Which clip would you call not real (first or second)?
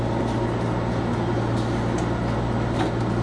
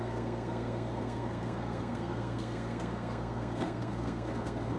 second